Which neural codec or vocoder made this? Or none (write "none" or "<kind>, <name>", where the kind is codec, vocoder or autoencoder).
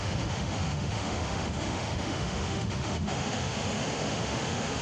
autoencoder, DAC-VAE